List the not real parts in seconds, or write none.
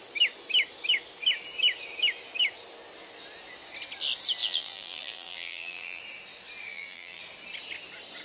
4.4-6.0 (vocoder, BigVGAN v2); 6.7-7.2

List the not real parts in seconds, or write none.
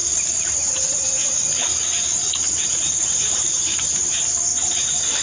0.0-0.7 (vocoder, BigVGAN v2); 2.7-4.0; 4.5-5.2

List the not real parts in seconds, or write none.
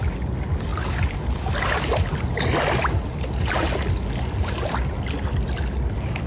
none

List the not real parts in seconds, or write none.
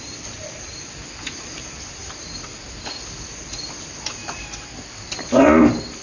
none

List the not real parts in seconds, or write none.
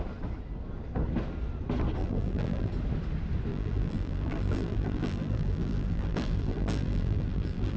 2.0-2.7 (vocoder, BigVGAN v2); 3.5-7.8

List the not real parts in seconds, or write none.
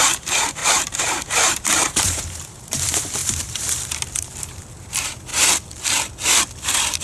0.0-5.3 (vocoder, BigVGAN v2)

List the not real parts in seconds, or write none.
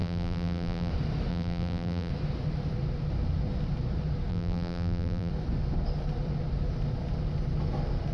0.0-0.9 (vocoder, BigVGAN v2); 1.3-2.1; 4.3-5.3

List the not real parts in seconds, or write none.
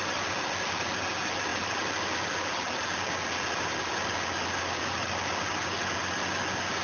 none